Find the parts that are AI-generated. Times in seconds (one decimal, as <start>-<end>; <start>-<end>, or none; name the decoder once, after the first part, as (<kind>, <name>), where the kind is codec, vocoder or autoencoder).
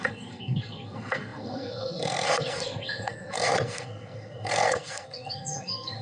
0.0-6.0 (codec, SNAC)